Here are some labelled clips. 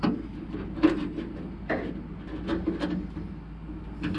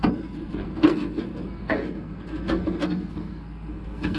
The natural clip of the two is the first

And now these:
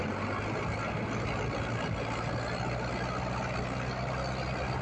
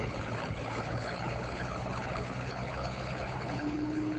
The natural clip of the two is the first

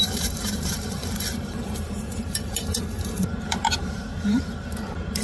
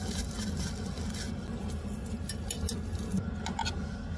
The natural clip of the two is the second